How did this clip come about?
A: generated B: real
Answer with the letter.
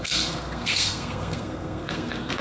A